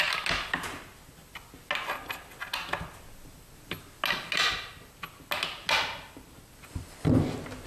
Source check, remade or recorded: recorded